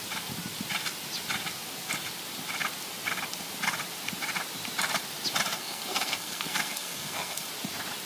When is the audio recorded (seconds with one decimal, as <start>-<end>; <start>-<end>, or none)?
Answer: 0.0-5.5; 7.5-8.1